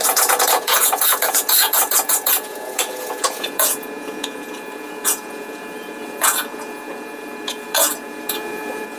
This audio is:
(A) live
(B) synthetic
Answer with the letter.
B